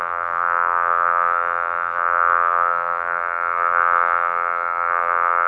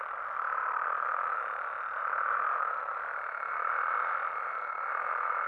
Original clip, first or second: second